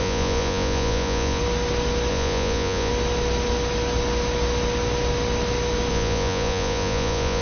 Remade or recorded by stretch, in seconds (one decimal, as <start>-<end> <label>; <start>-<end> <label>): 0.0-1.4 remade; 1.4-2.1 recorded; 2.1-2.9 remade; 2.9-5.9 recorded; 5.9-7.4 remade